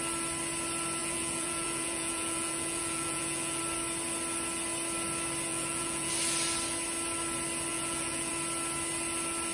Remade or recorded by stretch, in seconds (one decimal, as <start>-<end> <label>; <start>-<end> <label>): 0.0-1.0 recorded; 1.0-3.6 remade; 3.6-5.5 recorded; 5.5-6.1 remade; 6.1-7.7 recorded; 7.7-8.3 remade; 8.3-9.5 recorded